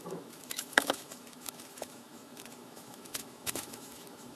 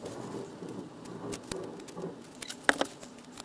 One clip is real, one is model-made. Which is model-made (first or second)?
first